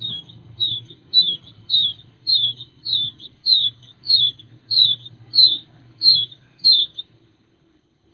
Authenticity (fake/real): fake